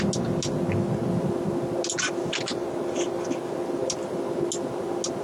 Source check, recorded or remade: recorded